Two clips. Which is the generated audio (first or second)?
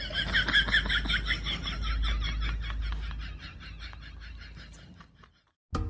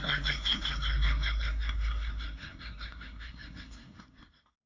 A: second